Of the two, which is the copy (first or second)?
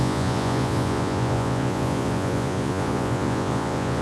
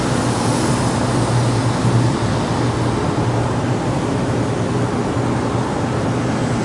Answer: first